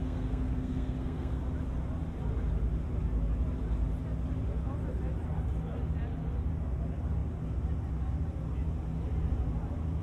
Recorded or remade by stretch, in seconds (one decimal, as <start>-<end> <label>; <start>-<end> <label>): 0.0-1.4 remade; 1.4-10.0 recorded